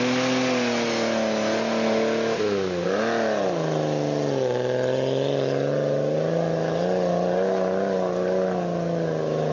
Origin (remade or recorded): recorded